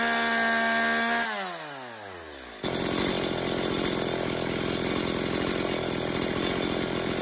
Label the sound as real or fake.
real